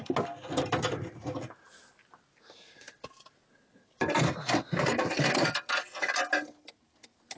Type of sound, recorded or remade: recorded